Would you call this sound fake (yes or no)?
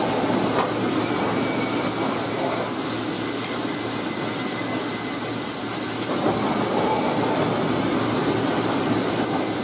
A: no